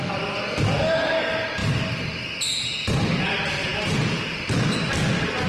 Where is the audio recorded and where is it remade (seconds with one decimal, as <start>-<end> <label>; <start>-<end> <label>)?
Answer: 0.0-5.5 recorded